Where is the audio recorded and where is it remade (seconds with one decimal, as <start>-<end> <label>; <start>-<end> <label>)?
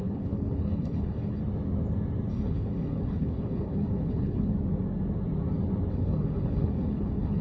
0.0-1.4 remade; 1.4-2.3 recorded; 2.3-4.5 remade; 4.5-5.9 recorded; 5.9-7.4 remade